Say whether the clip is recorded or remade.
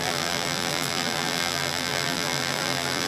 remade